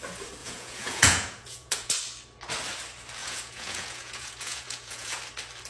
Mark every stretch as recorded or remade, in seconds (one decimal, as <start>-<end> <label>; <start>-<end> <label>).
0.0-0.4 recorded; 0.4-1.9 remade; 1.9-3.2 recorded; 3.2-5.2 remade; 5.2-5.7 recorded